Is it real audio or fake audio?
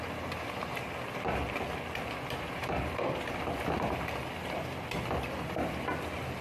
real